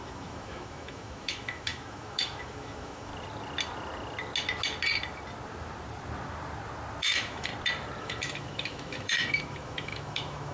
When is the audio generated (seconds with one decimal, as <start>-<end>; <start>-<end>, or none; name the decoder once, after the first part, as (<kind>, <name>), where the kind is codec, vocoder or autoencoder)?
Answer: 0.0-3.1 (autoencoder, DAC-VAE); 7.0-7.5; 8.0-10.5